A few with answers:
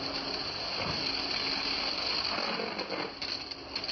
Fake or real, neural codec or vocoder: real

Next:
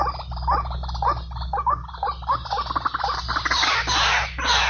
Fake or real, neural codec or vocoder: real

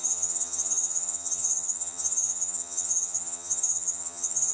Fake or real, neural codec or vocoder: fake, vocoder, HiFi-GAN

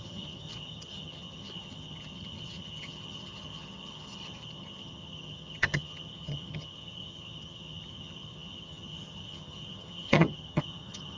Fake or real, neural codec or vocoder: fake, vocoder, HiFi-GAN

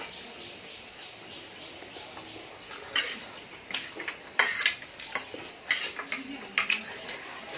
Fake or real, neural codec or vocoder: real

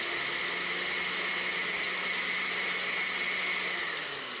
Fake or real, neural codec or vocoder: real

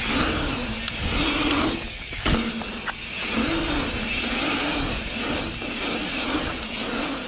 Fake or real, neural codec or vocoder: real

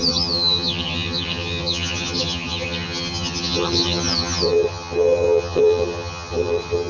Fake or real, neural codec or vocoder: fake, vocoder, HiFi-GAN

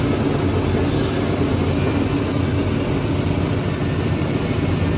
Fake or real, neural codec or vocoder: real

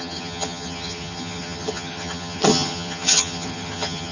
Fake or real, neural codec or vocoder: fake, vocoder, HiFi-GAN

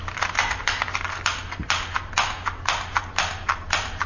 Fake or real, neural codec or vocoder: real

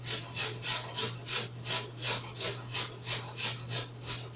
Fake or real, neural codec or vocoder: real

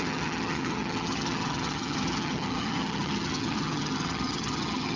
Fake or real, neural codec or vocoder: fake, vocoder, HiFi-GAN